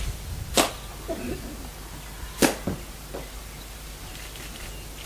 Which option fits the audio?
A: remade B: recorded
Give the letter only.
B